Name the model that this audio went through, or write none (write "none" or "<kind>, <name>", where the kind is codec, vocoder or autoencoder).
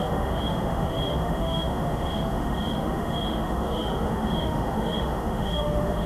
autoencoder, DAC-VAE